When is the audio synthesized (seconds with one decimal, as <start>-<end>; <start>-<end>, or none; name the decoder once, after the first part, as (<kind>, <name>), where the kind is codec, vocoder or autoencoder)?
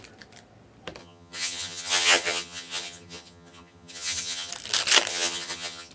1.0-4.5 (vocoder, HiFi-GAN); 5.1-5.9